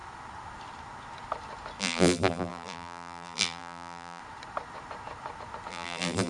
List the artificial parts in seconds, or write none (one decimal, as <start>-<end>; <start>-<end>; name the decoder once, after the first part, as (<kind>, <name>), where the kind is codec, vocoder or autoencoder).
1.8-4.2 (vocoder, BigVGAN v2); 5.7-6.3